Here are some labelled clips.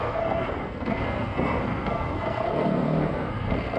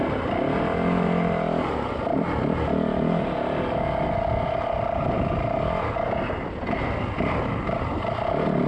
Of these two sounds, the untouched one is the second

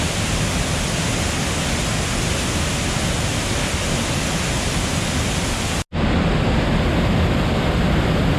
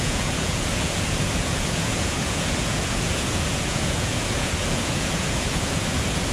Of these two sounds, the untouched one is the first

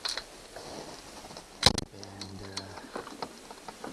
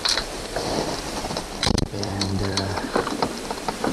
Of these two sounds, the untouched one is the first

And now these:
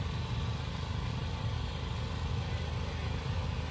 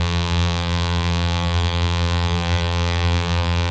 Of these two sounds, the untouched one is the first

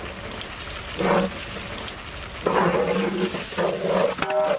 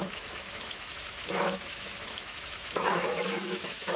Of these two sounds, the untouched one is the first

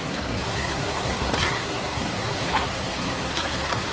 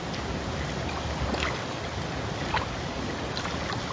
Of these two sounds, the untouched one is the second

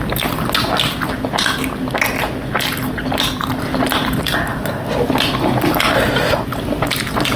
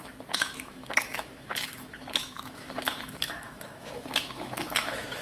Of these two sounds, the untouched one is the first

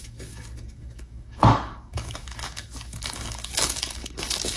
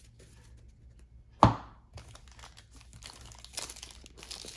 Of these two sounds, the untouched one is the second